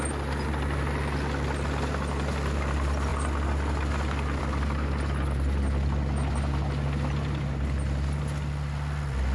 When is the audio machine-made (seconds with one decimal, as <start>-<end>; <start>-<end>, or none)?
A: none